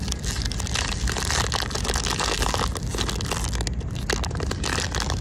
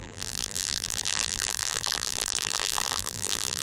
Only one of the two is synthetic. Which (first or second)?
second